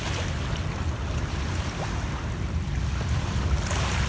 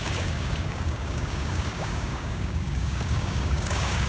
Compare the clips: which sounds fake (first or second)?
second